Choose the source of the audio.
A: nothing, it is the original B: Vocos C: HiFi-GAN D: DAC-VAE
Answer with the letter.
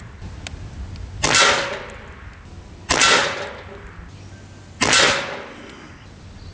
A